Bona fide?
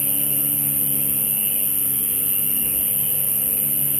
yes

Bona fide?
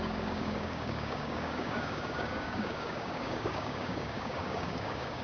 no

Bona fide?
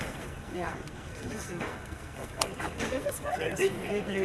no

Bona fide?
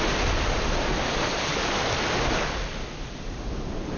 yes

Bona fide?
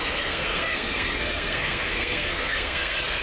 no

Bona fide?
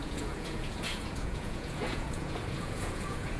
no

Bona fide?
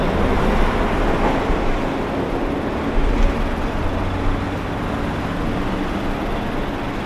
yes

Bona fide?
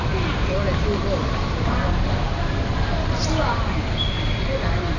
yes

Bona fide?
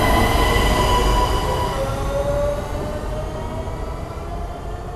yes